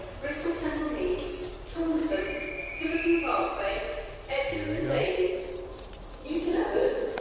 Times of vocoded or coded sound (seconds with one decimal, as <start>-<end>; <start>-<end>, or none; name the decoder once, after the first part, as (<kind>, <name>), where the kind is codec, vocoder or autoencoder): none